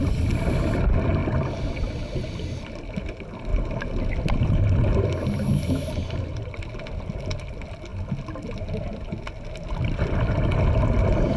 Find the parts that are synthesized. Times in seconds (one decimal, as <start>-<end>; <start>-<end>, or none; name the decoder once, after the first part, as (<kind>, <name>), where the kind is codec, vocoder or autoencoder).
none